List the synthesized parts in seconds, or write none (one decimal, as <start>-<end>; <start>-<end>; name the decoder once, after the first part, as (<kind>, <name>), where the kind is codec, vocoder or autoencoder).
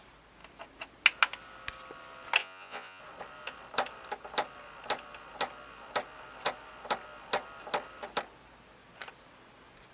2.4-3.0 (vocoder, Vocos)